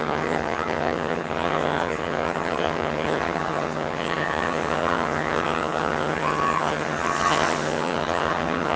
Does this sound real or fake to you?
fake